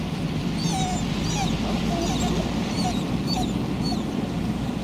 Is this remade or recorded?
recorded